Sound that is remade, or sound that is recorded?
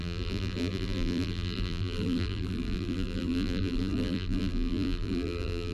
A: remade